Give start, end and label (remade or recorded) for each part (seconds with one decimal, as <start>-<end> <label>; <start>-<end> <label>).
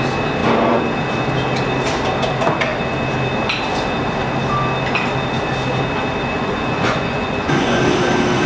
0.0-6.3 recorded; 6.3-7.8 remade; 7.8-8.5 recorded